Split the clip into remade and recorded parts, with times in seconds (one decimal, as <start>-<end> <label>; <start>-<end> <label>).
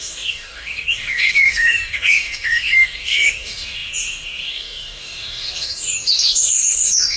0.0-7.2 remade